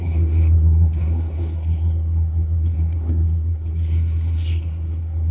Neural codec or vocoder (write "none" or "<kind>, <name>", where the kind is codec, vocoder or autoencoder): codec, SNAC